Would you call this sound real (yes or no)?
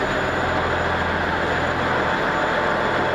yes